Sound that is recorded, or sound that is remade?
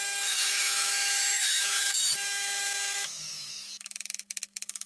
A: remade